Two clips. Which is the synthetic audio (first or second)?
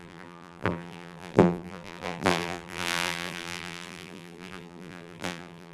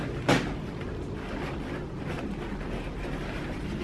first